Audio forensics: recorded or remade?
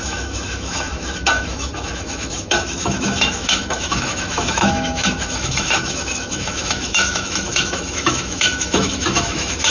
remade